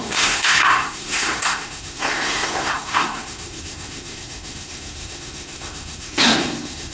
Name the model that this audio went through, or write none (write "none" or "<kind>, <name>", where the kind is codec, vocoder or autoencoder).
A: codec, SNAC